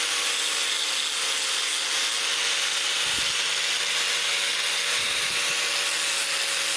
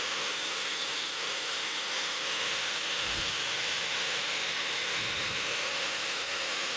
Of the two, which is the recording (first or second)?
first